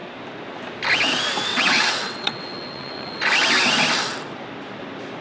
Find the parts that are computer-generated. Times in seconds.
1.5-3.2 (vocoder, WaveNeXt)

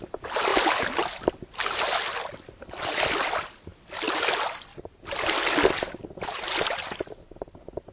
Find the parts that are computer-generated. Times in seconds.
none

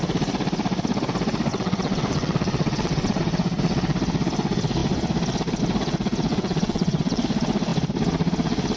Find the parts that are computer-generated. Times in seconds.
1.5-3.2 (vocoder, WaveNeXt); 6.3-7.2